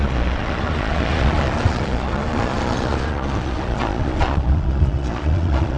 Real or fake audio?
fake